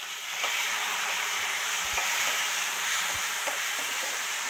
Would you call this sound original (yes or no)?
no